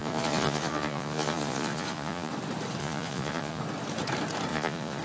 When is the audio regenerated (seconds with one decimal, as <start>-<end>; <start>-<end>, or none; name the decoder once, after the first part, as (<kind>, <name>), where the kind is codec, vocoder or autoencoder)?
0.0-2.3 (vocoder, Vocos); 2.8-3.6; 4.5-5.0